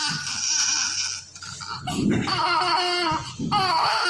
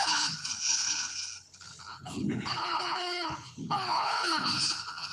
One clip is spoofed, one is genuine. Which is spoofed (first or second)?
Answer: second